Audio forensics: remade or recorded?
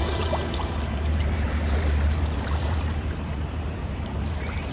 remade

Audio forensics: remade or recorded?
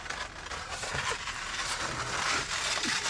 remade